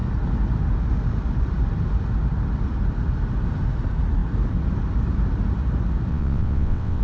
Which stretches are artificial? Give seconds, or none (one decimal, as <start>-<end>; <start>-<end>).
6.1-7.0